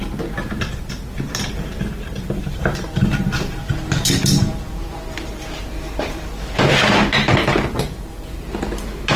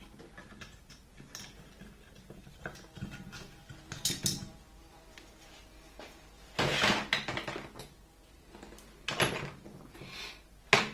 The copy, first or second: first